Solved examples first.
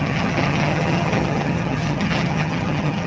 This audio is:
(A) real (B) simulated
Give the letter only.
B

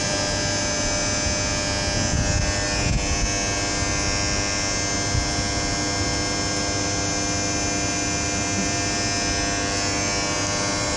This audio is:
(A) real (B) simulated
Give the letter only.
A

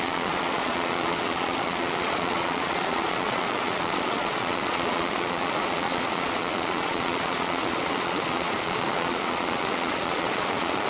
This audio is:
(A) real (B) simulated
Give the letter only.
B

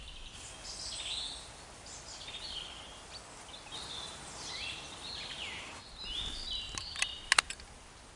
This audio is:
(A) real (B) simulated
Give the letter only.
A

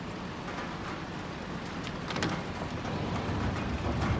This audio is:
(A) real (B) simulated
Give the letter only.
A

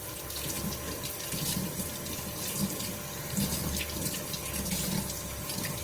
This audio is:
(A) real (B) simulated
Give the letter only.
A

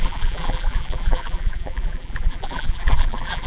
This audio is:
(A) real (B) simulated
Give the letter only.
B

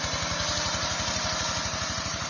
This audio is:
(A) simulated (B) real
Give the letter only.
B